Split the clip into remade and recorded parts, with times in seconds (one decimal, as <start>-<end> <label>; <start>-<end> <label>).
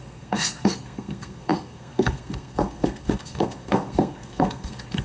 0.0-5.0 remade